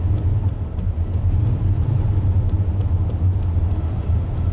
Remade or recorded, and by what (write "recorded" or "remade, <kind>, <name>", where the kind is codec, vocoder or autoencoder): recorded